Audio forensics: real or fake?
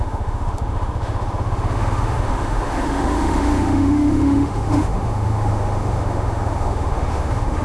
fake